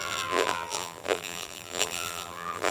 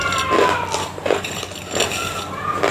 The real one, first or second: second